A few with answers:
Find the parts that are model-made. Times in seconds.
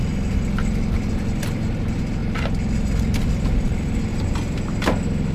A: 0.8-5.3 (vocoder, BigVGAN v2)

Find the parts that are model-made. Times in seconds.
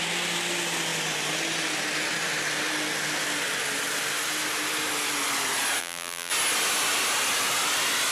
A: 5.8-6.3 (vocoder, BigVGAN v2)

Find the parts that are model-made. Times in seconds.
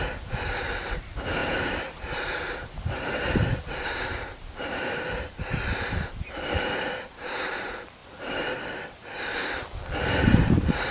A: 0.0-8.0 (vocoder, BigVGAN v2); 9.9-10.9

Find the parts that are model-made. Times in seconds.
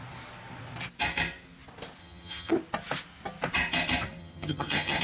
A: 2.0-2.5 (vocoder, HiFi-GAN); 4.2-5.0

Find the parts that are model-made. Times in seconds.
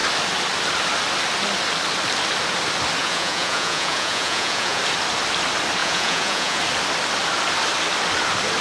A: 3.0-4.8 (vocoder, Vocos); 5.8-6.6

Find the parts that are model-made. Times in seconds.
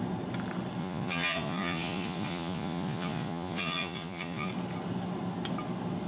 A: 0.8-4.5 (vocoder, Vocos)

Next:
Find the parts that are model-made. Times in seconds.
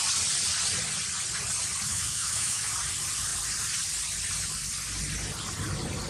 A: 1.9-2.7 (autoencoder, DAC-VAE)